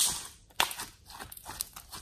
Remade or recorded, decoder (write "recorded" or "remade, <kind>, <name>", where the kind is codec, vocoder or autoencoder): recorded